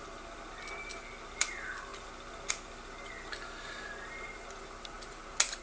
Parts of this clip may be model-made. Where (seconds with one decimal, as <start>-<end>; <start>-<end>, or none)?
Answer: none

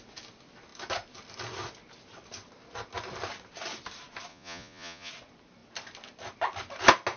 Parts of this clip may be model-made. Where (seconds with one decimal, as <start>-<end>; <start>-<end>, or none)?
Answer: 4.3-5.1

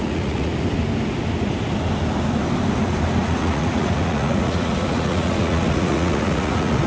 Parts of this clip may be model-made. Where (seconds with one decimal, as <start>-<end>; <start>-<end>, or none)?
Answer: 0.0-0.5; 3.2-6.9

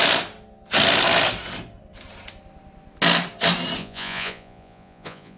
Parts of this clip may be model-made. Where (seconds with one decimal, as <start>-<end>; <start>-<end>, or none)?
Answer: 3.8-5.4